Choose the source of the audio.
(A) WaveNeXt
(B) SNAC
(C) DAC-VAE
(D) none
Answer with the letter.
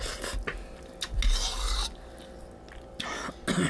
D